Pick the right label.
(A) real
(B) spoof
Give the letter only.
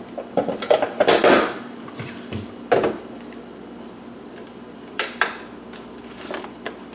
B